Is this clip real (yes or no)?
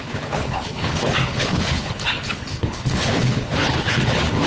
no